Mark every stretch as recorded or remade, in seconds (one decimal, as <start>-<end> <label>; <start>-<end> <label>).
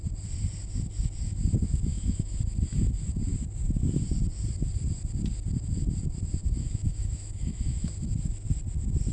0.0-1.9 recorded; 1.9-2.4 remade; 2.4-6.4 recorded; 6.4-7.9 remade; 7.9-9.1 recorded